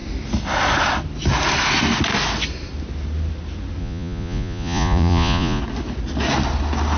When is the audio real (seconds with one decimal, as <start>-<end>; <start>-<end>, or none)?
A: 0.0-3.8; 5.6-7.0